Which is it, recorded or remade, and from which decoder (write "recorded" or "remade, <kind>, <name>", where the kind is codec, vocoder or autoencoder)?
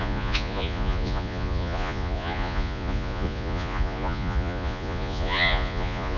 remade, vocoder, Vocos